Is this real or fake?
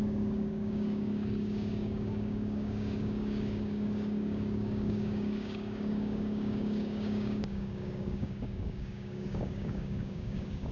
fake